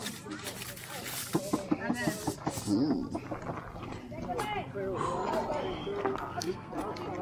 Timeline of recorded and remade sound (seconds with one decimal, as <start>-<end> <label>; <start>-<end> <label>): 0.0-6.0 recorded; 6.0-6.7 remade; 6.7-7.2 recorded